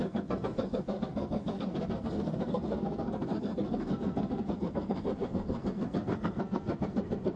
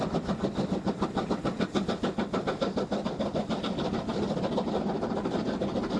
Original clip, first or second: second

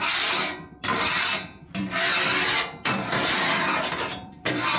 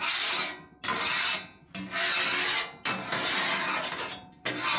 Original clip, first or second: second